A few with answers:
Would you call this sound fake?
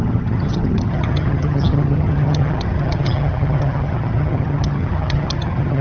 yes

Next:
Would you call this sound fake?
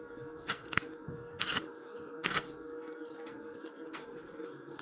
yes